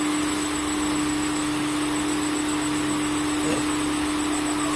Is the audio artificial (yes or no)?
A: no